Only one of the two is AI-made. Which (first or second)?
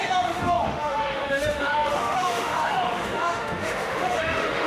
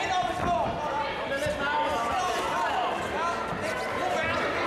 first